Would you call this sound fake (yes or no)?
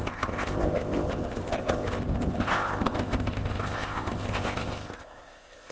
yes